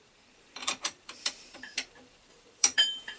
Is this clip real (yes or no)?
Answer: no